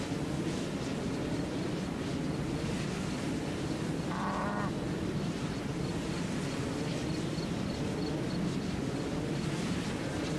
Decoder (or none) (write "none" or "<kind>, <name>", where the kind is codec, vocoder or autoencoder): none